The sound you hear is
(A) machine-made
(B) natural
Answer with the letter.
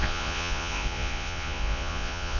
A